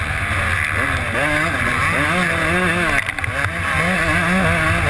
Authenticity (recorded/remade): recorded